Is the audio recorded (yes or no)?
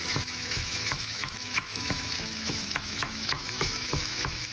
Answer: no